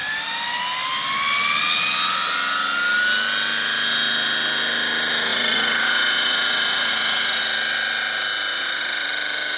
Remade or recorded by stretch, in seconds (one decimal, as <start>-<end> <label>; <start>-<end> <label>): 0.0-5.3 recorded; 5.3-7.4 remade; 7.4-8.5 recorded; 8.5-9.1 remade; 9.1-9.6 recorded